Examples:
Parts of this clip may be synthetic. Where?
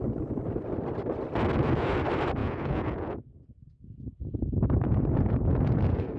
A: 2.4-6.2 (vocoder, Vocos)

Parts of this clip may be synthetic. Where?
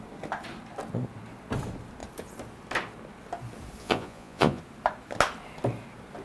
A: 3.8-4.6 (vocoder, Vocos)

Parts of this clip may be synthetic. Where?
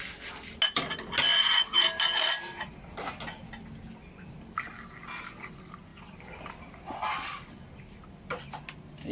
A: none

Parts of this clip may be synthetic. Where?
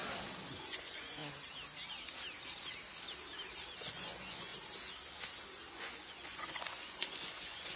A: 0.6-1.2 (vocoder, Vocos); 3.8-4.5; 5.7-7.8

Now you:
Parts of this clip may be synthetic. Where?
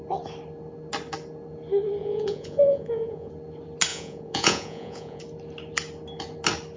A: 2.0-3.3 (vocoder, Vocos); 3.9-5.2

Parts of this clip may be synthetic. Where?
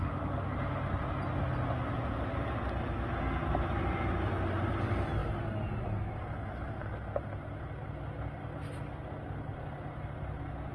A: none